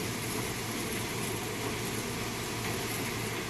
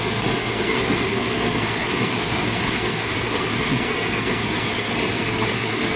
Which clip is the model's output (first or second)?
second